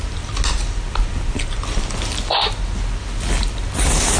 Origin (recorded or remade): recorded